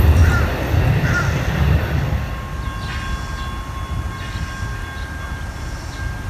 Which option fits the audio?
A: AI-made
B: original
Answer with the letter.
B